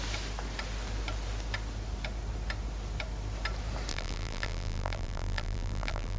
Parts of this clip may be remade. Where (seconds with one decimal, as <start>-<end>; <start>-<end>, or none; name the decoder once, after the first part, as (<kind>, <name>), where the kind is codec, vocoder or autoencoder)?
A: 3.9-6.2 (vocoder, BigVGAN v2)